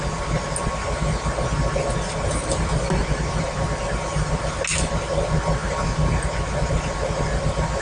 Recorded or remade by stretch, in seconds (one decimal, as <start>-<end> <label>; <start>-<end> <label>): 0.0-7.8 recorded